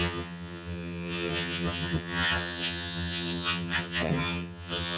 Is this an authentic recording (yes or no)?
no